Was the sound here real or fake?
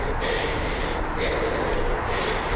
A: real